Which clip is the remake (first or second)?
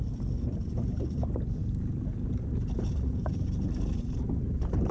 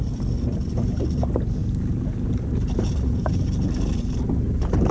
first